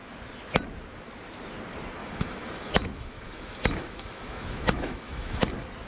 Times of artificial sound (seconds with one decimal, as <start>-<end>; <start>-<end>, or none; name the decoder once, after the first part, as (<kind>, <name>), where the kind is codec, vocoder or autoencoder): 2.0-5.5 (autoencoder, DAC-VAE)